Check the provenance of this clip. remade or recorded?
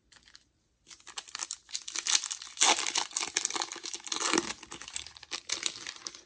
recorded